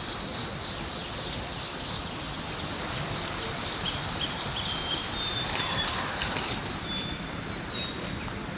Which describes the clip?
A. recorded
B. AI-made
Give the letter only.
A